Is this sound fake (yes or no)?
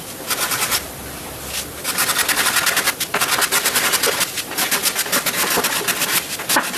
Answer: no